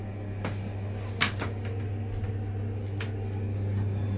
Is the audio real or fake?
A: real